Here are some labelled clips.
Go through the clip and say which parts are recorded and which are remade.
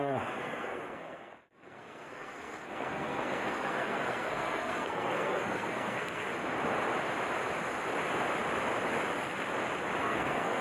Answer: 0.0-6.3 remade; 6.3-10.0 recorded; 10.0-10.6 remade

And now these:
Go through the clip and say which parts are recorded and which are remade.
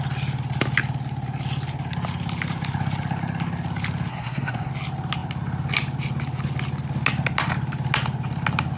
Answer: 0.0-4.1 recorded; 4.1-4.7 remade; 4.7-8.8 recorded